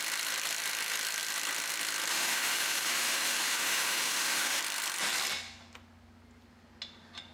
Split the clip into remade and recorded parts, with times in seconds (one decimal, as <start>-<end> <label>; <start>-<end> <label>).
0.0-2.1 recorded; 2.1-4.6 remade; 4.6-7.3 recorded